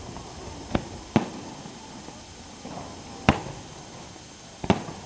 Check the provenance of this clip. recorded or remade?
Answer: recorded